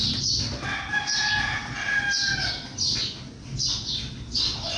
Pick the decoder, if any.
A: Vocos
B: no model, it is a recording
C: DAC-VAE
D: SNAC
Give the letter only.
B